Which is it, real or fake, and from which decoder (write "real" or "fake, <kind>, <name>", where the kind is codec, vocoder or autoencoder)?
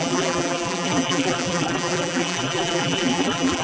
fake, vocoder, BigVGAN v2